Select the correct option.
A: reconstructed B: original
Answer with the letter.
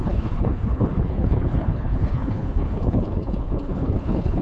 A